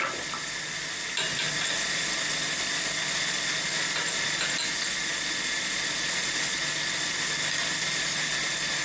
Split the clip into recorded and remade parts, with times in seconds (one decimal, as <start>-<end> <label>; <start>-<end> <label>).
0.0-8.8 recorded